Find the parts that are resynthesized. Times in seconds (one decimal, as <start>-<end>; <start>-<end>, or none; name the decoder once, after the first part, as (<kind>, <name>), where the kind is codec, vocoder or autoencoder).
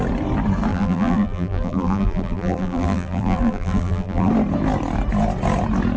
0.7-4.3 (vocoder, BigVGAN v2)